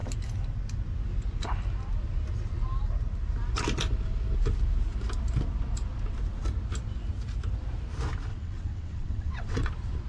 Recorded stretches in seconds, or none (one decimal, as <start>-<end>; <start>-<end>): 0.0-8.3; 9.7-10.1